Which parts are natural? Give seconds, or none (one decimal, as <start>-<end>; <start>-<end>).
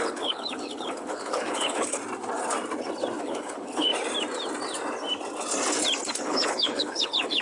2.0-3.2; 3.9-6.1